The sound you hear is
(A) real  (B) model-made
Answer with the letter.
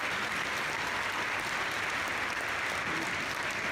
A